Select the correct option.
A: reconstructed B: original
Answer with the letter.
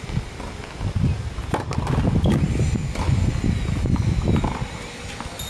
B